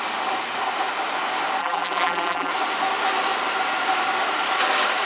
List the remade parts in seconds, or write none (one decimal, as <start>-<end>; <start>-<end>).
1.6-2.5